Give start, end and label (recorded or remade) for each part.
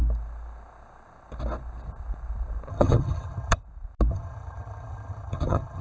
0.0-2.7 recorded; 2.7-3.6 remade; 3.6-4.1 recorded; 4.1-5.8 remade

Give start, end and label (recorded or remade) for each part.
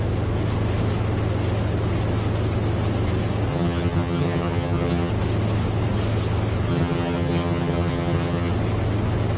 0.0-3.5 recorded; 3.5-5.1 remade; 5.1-6.7 recorded; 6.7-8.5 remade; 8.5-9.4 recorded